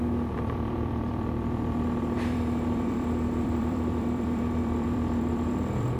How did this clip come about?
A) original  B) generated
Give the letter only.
B